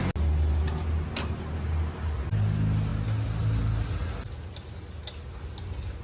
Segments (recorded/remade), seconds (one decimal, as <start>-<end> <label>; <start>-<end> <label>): 0.0-6.0 recorded